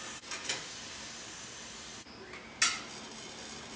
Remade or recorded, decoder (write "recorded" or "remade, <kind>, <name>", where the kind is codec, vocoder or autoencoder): recorded